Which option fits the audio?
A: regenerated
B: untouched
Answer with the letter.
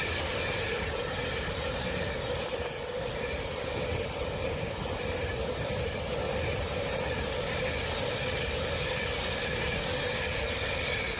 B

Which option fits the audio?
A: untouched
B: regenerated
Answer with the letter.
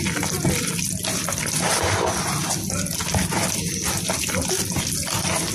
A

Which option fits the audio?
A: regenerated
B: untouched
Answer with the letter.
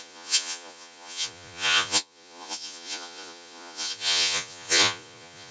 A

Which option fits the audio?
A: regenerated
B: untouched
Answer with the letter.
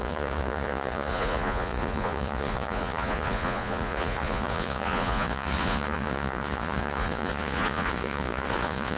A